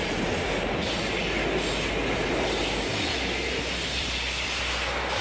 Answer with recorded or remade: recorded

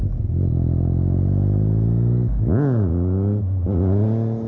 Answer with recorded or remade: recorded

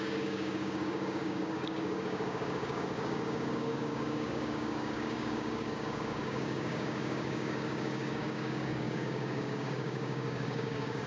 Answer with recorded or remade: remade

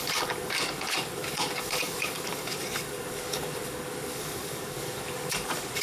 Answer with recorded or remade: remade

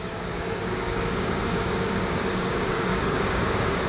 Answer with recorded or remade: remade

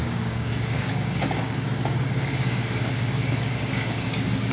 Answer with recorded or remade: remade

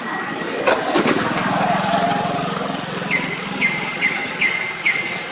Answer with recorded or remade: remade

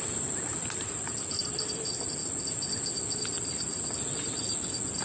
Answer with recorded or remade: recorded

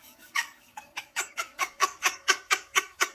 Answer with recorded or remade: remade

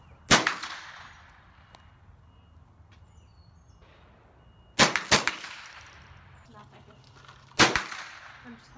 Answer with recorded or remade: recorded